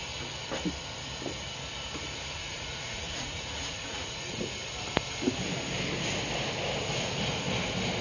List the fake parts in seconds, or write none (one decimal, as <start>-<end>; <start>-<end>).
2.4-4.5